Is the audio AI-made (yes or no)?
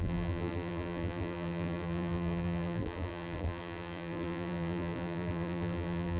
yes